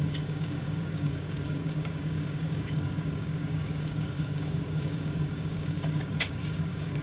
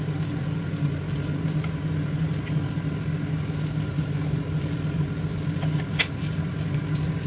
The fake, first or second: first